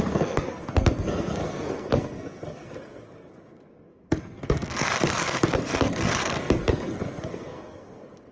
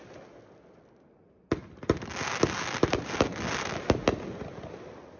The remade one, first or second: first